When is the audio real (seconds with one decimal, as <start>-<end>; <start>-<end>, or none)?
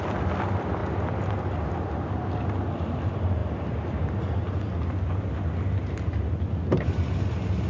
0.0-7.7